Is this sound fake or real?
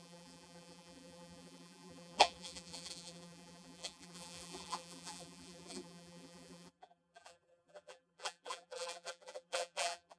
fake